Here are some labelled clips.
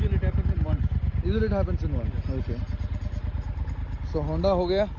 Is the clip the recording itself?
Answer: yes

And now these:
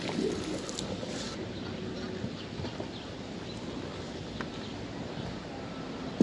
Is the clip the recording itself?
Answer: yes